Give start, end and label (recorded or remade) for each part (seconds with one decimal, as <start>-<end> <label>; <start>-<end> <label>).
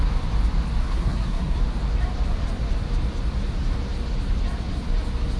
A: 0.0-0.8 recorded; 0.8-1.6 remade; 1.6-5.4 recorded